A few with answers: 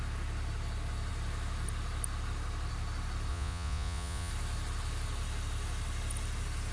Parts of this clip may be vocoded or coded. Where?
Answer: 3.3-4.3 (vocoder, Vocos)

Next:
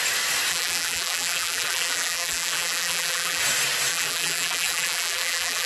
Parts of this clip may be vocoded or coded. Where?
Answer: 0.5-3.4 (vocoder, BigVGAN v2); 3.9-5.7

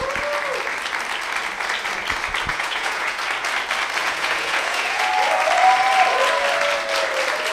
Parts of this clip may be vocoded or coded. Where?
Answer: 2.5-3.2 (vocoder, Vocos); 4.0-5.1

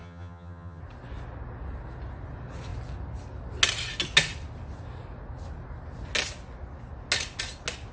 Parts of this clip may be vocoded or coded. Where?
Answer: 0.0-0.8 (vocoder, HiFi-GAN)